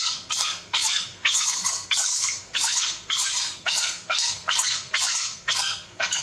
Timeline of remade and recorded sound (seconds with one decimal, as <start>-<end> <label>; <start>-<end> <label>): 0.0-6.2 remade